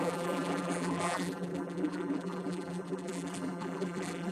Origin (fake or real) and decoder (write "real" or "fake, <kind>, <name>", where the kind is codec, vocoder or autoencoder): fake, vocoder, BigVGAN v2